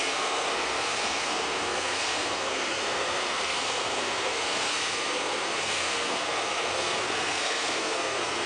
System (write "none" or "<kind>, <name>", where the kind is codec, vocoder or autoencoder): codec, SNAC